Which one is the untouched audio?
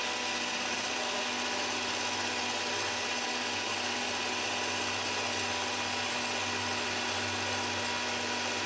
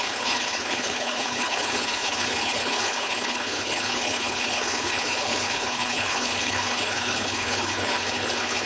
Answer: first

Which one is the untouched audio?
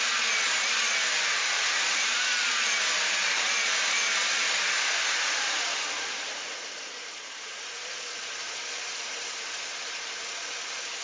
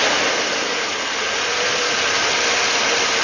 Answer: second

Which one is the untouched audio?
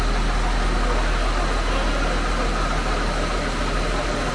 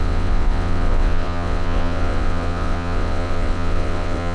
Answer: first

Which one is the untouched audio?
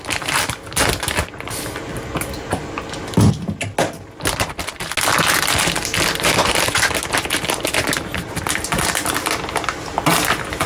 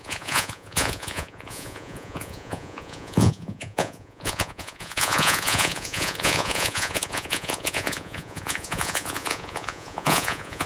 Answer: first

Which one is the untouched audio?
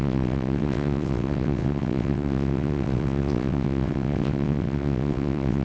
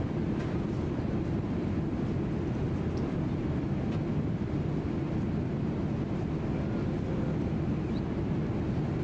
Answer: second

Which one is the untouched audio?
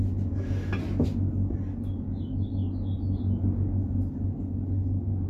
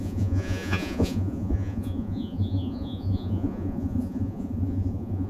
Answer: first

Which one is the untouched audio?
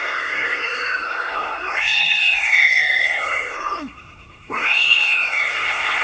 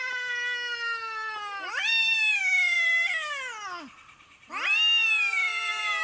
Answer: second